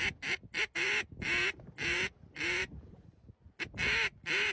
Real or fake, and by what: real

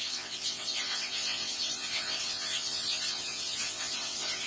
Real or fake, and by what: fake, vocoder, WaveNeXt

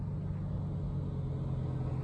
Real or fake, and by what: real